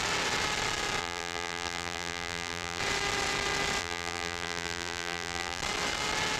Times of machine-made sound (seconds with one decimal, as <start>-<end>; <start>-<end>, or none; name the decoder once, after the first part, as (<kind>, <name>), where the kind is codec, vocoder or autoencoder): 1.0-2.8 (vocoder, BigVGAN v2); 3.8-5.6